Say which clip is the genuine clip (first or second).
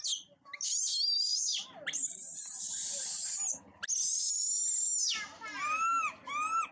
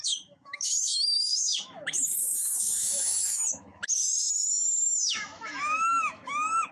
first